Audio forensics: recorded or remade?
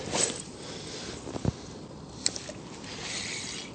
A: recorded